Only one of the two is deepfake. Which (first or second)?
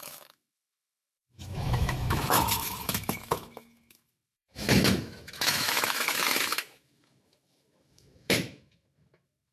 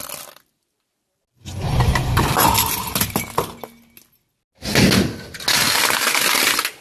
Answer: first